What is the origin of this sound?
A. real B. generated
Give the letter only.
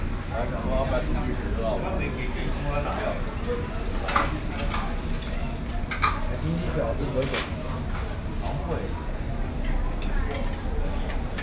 A